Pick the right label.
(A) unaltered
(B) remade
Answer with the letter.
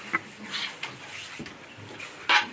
A